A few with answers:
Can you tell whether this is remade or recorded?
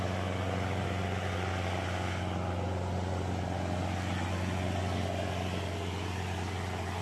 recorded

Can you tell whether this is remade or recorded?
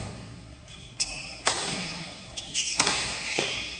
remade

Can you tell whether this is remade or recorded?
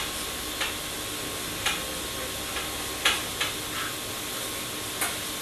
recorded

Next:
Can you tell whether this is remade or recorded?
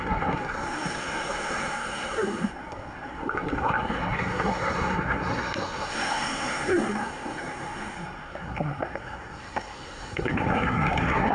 remade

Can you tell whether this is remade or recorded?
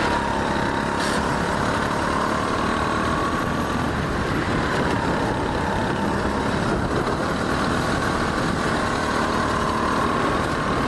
recorded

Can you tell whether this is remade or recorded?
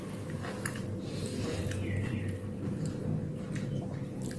recorded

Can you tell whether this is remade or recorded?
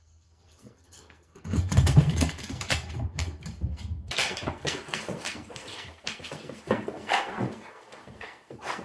remade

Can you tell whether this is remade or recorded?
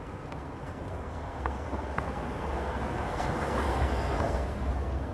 remade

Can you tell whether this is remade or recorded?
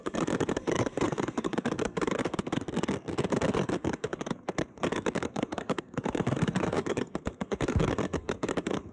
remade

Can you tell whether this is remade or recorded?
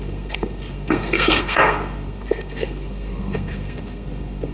remade